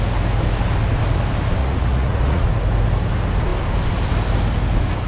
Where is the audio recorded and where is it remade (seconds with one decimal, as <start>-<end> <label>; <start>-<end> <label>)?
0.0-1.6 recorded; 1.6-2.5 remade; 2.5-5.1 recorded